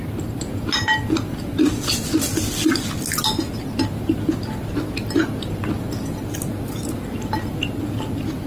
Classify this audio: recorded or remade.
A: recorded